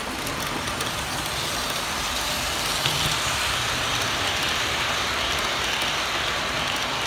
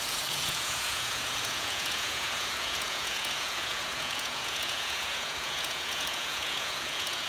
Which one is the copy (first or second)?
second